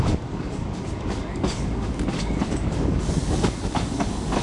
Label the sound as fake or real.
fake